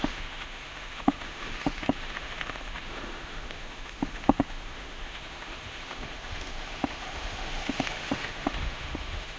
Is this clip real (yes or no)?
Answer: no